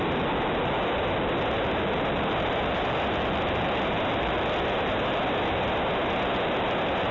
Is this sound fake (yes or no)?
no